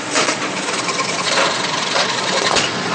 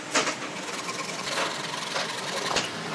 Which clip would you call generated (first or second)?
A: first